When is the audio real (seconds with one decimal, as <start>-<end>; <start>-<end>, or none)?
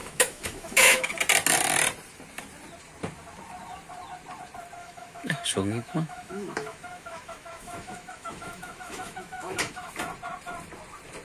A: 1.1-4.8; 9.9-11.2